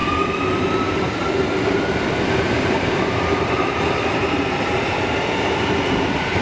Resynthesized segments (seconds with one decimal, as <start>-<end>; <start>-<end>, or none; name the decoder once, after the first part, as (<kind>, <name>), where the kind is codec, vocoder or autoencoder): 0.0-6.4 (vocoder, BigVGAN v2)